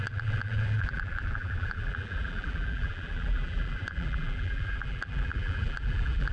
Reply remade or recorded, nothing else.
remade